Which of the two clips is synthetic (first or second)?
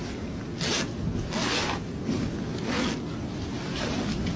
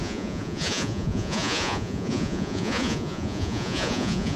second